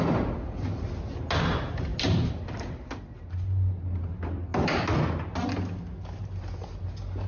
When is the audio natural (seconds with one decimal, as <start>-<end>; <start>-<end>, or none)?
0.0-7.3